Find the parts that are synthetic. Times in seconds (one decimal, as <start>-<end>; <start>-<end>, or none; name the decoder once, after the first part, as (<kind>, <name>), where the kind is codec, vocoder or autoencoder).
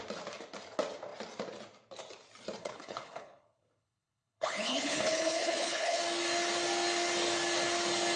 2.6-6.0 (codec, HILCodec)